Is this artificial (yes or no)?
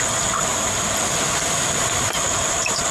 no